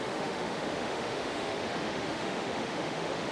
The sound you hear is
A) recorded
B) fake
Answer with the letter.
B